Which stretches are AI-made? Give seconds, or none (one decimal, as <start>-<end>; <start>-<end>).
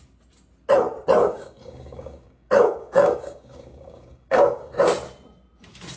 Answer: 1.2-4.8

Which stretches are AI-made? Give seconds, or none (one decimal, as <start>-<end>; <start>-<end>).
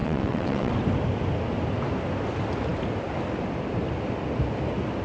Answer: 0.0-0.7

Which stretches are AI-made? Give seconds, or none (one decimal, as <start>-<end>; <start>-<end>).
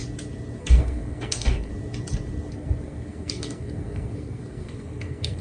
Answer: 0.6-1.7; 2.5-5.4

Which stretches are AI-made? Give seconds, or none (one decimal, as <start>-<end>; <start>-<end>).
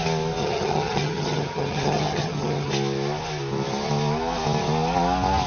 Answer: 0.4-2.7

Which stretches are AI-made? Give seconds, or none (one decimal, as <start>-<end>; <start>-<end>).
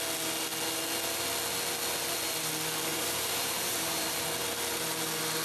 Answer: 2.9-4.3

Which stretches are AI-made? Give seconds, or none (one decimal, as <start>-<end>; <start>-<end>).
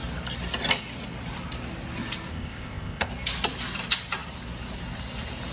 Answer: 2.3-3.1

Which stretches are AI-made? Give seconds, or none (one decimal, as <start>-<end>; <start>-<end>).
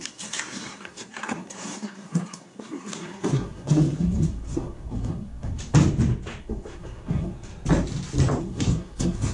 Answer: 0.0-5.6; 6.4-7.5; 8.4-9.3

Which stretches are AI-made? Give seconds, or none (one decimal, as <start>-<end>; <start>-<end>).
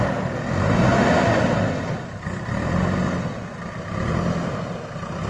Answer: none